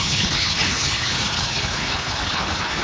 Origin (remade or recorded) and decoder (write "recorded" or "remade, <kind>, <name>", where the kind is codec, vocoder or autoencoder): remade, codec, HILCodec